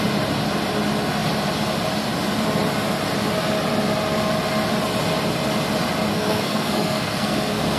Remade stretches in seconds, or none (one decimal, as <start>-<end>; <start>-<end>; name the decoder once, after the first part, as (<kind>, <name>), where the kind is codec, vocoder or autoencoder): 6.1-7.8 (codec, SNAC)